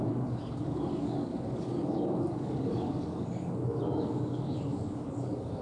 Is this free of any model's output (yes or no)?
no